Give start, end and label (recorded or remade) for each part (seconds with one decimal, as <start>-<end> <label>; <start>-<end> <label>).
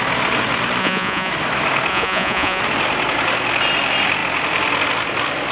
0.0-0.8 recorded; 0.8-1.3 remade; 1.3-1.9 recorded; 1.9-2.6 remade; 2.6-5.5 recorded